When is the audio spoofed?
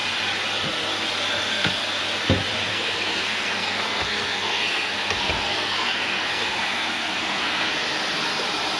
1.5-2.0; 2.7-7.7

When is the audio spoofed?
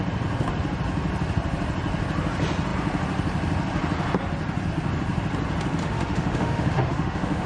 5.8-7.5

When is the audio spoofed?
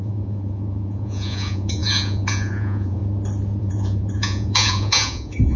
0.0-3.0; 3.6-5.6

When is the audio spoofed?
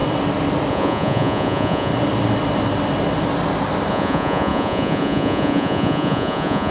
0.7-1.9; 3.9-6.7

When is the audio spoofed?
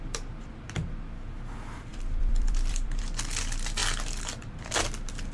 1.9-3.0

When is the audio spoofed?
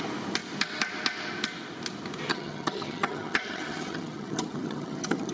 2.3-5.3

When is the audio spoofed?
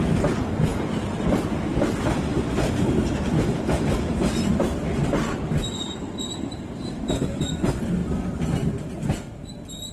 2.3-7.4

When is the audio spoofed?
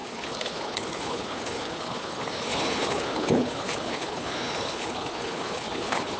0.0-6.2